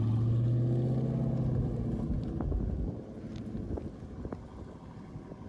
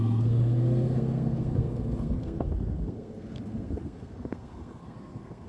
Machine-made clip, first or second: second